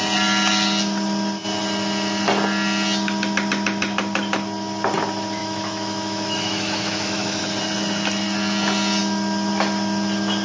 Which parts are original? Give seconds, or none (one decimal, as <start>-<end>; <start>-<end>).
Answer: 0.0-5.4; 7.4-10.4